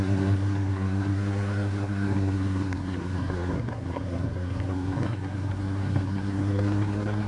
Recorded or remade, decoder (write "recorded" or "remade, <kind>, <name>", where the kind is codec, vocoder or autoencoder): remade, codec, SNAC